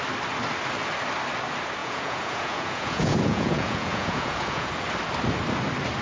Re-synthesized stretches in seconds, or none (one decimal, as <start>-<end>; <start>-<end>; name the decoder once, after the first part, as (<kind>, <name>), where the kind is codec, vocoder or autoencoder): 1.8-4.7 (vocoder, Vocos)